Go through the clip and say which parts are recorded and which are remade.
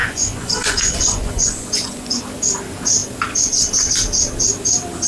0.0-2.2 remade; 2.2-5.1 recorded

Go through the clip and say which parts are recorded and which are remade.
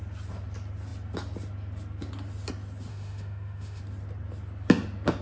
0.0-2.9 recorded; 2.9-3.8 remade; 3.8-5.2 recorded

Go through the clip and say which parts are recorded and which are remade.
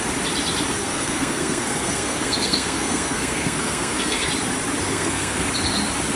0.0-0.8 recorded; 0.8-4.3 remade; 4.3-4.9 recorded; 4.9-5.5 remade; 5.5-6.2 recorded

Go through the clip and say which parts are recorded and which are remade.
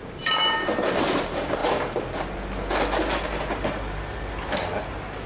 0.0-5.3 recorded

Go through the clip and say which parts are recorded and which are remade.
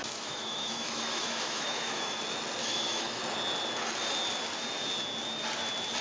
0.0-2.2 remade; 2.2-2.6 recorded; 2.6-3.2 remade; 3.2-6.0 recorded